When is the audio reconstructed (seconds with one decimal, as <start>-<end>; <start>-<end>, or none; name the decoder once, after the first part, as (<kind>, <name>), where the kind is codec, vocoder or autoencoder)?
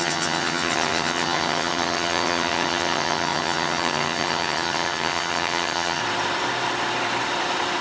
0.0-6.0 (vocoder, HiFi-GAN)